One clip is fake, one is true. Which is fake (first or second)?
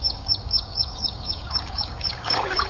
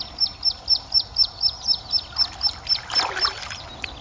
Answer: first